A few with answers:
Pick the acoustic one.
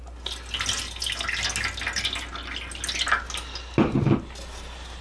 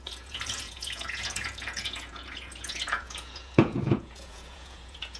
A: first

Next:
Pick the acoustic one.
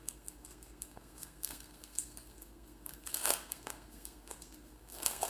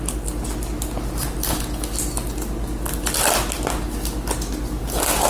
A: second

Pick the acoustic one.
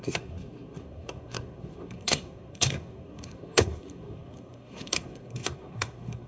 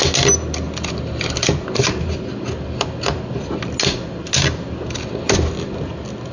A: second